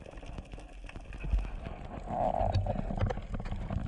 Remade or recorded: recorded